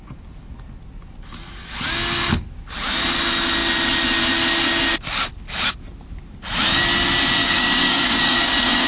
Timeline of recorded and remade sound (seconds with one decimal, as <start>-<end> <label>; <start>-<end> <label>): 0.0-7.4 recorded; 7.4-8.9 remade